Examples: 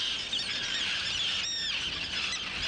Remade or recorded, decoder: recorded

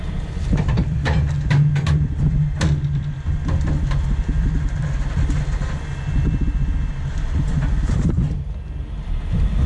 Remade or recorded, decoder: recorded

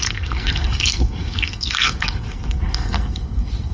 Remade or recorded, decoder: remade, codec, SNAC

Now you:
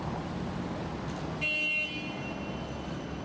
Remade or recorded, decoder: recorded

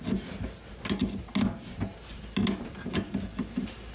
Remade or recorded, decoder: recorded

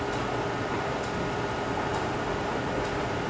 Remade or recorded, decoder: recorded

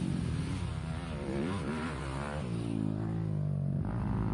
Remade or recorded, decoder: remade, vocoder, BigVGAN v2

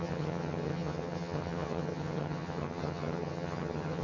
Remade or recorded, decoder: remade, vocoder, HiFi-GAN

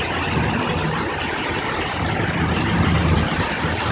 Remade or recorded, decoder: recorded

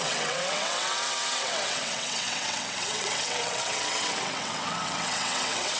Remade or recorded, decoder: remade, vocoder, WaveNeXt